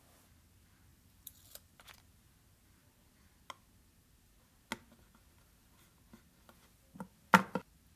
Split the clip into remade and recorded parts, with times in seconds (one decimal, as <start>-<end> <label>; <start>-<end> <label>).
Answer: 0.0-0.9 recorded; 0.9-1.8 remade; 1.8-8.0 recorded

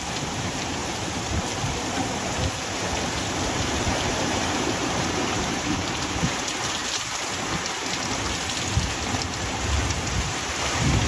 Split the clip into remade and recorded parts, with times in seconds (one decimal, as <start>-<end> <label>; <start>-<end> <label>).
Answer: 0.0-6.8 remade; 6.8-9.4 recorded; 9.4-11.1 remade

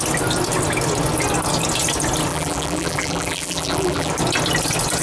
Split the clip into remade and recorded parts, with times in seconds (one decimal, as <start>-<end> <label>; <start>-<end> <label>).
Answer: 0.0-2.3 recorded; 2.3-4.1 remade; 4.1-5.0 recorded